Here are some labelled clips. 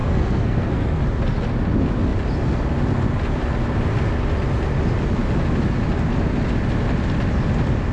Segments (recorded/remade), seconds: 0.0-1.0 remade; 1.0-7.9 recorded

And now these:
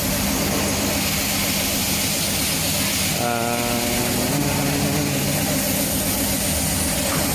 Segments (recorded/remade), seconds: 0.0-1.8 recorded; 1.8-2.4 remade; 2.4-7.3 recorded

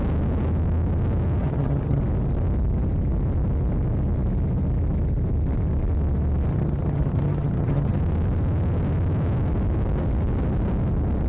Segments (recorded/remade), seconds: 0.0-1.4 recorded; 1.4-2.0 remade; 2.0-6.5 recorded; 6.5-8.0 remade; 8.0-11.3 recorded

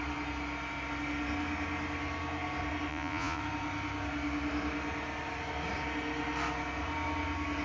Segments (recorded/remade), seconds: 0.0-2.9 recorded; 2.9-3.4 remade; 3.4-7.6 recorded

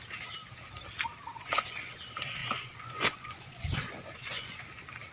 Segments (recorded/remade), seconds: 0.0-1.3 recorded; 1.3-2.0 remade; 2.0-2.4 recorded; 2.4-4.6 remade; 4.6-5.1 recorded

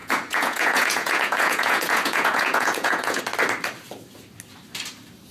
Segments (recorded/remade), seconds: 0.0-3.2 remade; 3.2-5.3 recorded

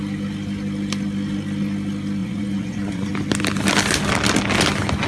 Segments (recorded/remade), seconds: 0.0-2.2 recorded; 2.2-3.1 remade; 3.1-5.1 recorded

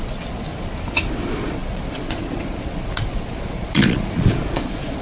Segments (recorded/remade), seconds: 0.0-0.5 remade; 0.5-1.2 recorded; 1.2-5.0 remade